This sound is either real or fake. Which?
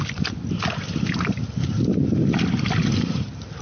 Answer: real